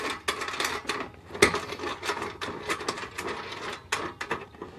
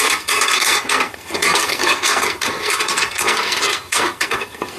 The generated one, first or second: second